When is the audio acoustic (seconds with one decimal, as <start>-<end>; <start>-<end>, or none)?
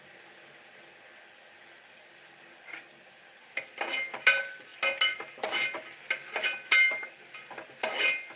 0.0-8.4